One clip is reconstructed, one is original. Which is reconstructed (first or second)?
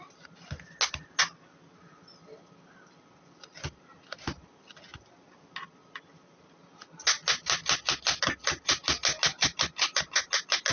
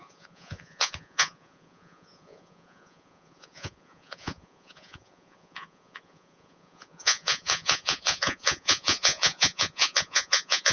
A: second